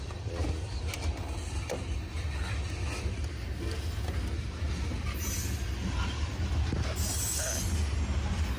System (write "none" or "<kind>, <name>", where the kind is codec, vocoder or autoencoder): none